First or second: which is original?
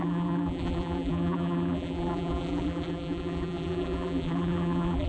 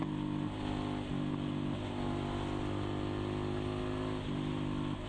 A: second